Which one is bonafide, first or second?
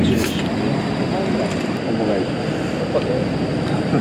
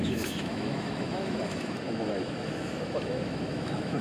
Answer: first